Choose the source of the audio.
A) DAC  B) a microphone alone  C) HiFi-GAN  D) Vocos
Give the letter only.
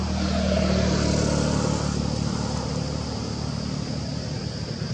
B